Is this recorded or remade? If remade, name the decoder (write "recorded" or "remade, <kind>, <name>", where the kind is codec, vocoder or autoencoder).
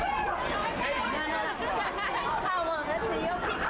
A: recorded